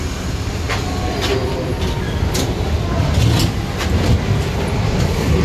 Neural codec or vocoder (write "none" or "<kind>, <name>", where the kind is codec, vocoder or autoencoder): none